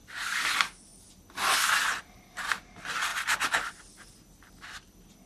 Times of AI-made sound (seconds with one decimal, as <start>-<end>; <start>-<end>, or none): none